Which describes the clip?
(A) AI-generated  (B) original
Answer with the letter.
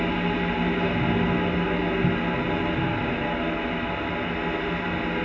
B